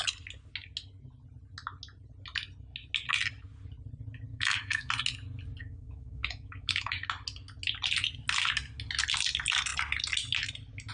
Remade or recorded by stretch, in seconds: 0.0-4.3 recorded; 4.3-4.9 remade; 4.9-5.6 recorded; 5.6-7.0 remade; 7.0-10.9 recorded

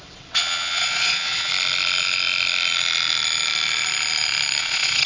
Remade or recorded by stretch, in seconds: 0.0-1.5 remade; 1.5-4.6 recorded; 4.6-5.1 remade

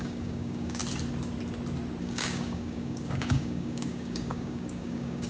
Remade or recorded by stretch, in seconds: 0.0-0.8 remade; 0.8-2.0 recorded; 2.0-5.3 remade